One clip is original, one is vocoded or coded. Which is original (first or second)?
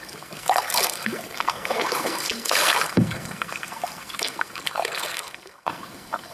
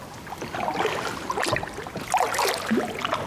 second